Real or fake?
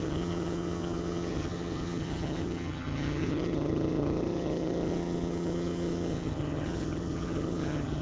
fake